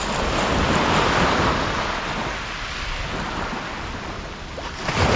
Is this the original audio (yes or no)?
yes